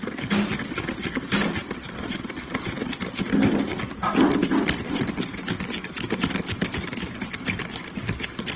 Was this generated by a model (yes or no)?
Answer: no